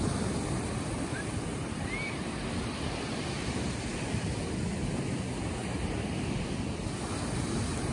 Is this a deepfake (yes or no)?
yes